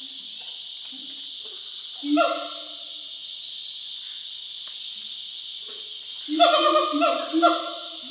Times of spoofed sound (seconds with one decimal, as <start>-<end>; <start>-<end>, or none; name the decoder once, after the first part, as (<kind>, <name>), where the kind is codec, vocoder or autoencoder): 7.6-8.1 (autoencoder, DAC-VAE)